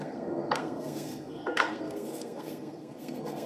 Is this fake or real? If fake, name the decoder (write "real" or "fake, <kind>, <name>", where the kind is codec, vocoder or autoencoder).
fake, codec, SNAC